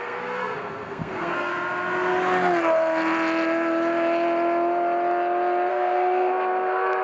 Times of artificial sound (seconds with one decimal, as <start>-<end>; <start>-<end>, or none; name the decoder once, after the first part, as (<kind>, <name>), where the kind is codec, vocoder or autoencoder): 0.0-1.5 (codec, SNAC); 5.7-7.0